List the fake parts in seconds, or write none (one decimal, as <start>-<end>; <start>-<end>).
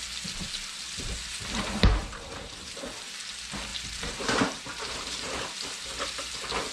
2.0-2.7; 3.7-6.3